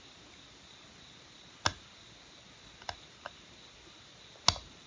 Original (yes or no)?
yes